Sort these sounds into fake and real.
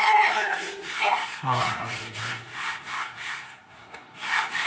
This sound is fake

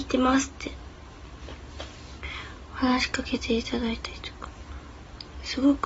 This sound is real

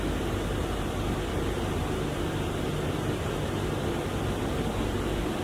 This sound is real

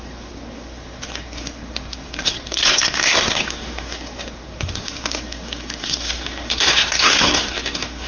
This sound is fake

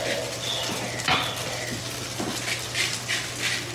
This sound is real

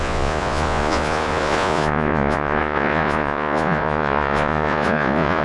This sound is fake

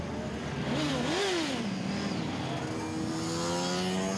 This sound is real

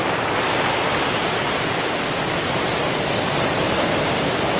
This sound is real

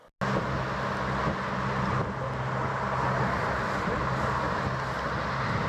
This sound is real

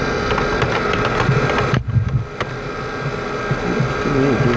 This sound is real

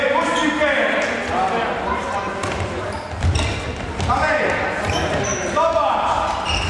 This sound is real